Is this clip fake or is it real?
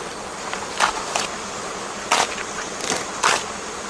real